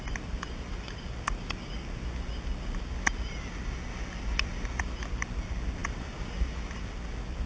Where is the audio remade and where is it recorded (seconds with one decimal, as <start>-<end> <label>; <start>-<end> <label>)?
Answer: 0.0-7.5 recorded